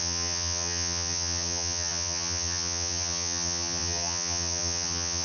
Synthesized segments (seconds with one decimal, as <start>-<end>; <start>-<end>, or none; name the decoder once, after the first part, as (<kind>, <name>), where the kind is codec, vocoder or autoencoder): 0.0-5.2 (vocoder, HiFi-GAN)